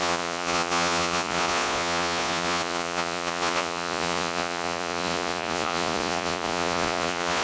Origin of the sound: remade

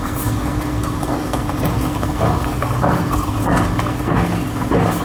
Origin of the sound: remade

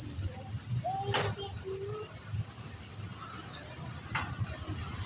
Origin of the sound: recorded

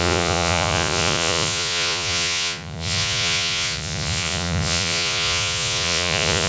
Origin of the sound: remade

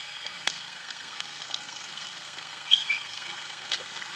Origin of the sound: remade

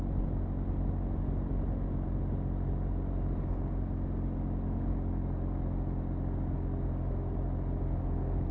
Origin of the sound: recorded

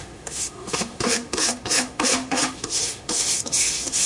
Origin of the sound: remade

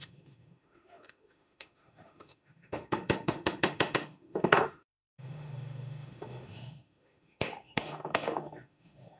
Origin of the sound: remade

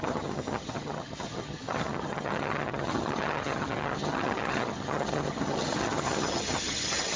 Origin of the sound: remade